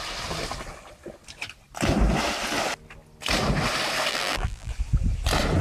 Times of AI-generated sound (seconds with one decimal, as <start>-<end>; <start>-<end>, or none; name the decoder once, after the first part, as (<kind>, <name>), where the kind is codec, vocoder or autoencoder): 4.1-4.7 (vocoder, BigVGAN v2)